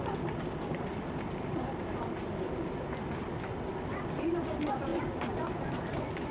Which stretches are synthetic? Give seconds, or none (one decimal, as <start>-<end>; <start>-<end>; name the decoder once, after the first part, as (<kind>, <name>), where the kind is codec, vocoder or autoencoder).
none